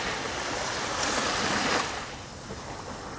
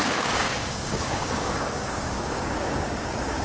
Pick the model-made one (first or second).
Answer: second